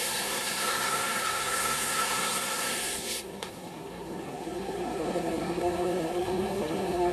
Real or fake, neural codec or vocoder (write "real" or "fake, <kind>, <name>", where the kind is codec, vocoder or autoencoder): fake, codec, SNAC